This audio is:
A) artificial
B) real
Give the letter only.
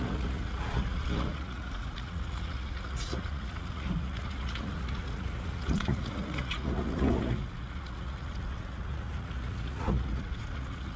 A